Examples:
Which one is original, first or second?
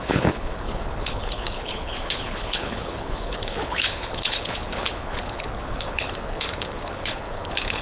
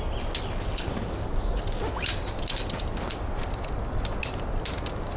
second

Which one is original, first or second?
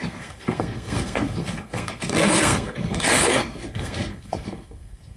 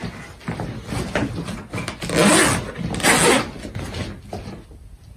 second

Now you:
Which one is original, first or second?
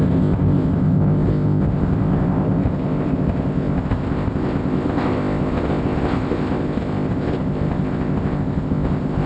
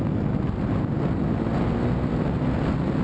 second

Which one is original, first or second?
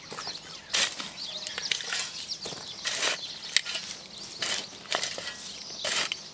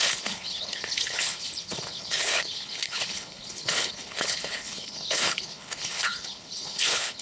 first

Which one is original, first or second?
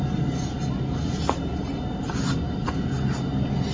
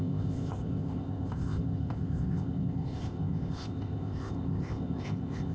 first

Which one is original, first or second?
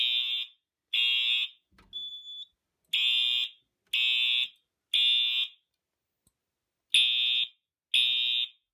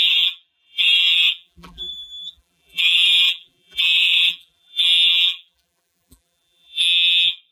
first